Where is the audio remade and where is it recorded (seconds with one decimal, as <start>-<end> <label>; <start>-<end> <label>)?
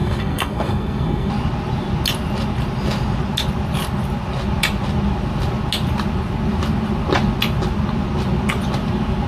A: 0.0-1.3 remade; 1.3-9.3 recorded